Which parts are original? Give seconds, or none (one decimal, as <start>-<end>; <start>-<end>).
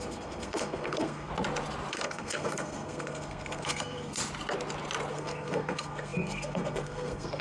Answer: 1.3-1.9; 4.2-5.1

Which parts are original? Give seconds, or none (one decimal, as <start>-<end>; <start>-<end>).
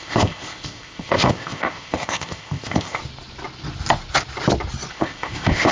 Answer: 3.0-4.9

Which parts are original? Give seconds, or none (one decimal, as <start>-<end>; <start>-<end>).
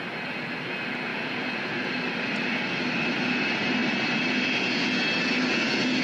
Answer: 0.0-1.1; 3.2-3.8; 4.6-6.0